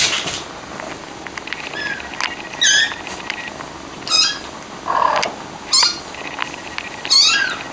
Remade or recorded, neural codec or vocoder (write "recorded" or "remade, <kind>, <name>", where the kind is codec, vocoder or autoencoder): recorded